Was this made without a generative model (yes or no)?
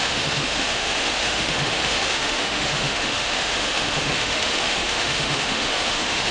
no